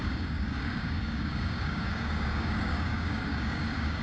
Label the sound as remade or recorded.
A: remade